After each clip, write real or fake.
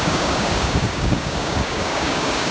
fake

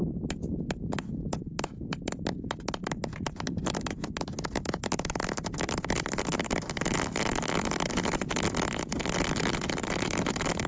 real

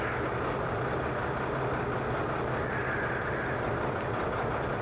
real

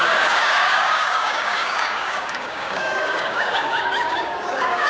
fake